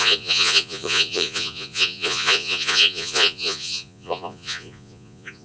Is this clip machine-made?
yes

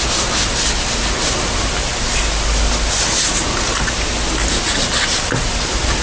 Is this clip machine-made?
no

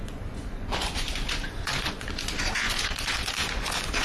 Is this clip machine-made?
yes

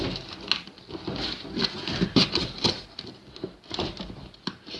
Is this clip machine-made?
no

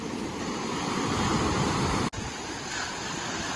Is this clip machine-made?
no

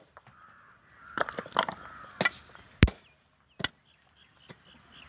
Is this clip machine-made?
no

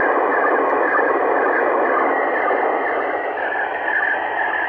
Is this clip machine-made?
no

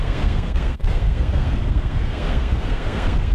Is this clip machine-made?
yes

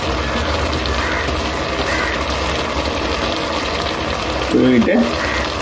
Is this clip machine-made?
no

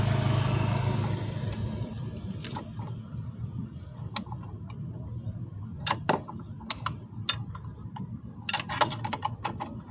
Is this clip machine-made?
no